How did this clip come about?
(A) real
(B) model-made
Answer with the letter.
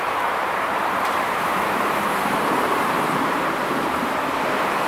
B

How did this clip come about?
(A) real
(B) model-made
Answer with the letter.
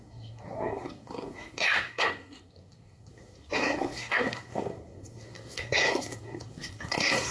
B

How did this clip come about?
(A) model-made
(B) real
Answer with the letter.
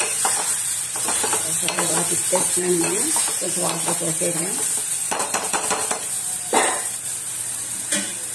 A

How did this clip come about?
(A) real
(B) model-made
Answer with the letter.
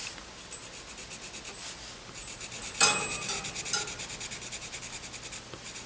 A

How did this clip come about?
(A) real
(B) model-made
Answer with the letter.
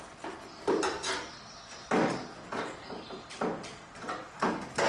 A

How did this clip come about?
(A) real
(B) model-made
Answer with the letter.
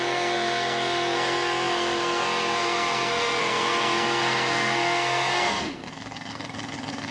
B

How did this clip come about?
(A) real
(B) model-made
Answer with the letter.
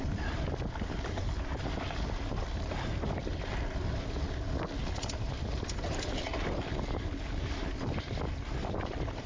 A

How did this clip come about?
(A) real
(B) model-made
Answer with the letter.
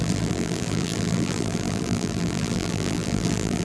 B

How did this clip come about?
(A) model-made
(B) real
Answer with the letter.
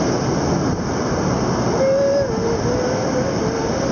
B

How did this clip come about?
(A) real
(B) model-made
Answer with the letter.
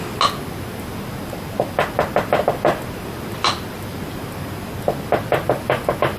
A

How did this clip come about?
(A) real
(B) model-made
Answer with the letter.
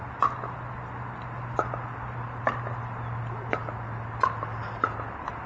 A